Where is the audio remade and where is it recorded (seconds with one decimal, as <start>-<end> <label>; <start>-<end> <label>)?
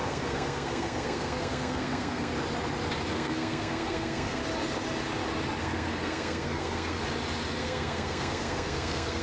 0.0-2.3 remade; 2.3-3.1 recorded; 3.1-4.4 remade; 4.4-5.6 recorded; 5.6-7.0 remade; 7.0-7.6 recorded; 7.6-9.2 remade